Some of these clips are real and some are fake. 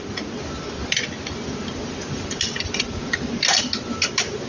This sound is real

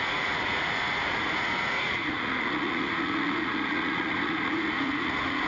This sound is fake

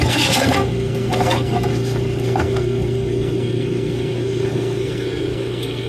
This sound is fake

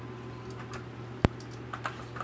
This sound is real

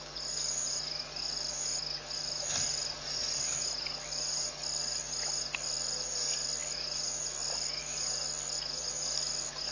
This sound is real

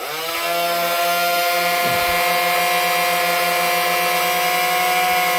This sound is real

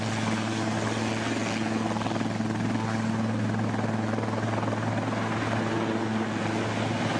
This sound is real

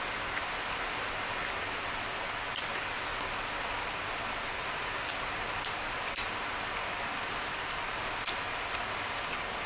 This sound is real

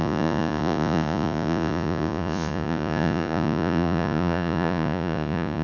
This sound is fake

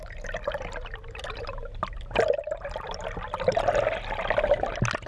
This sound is real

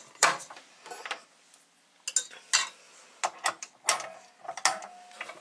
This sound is real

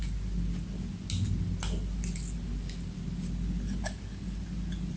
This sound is real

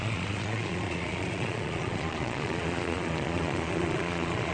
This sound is fake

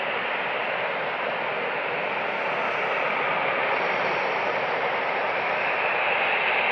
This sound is real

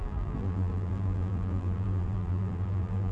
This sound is fake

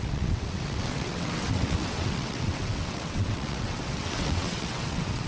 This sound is fake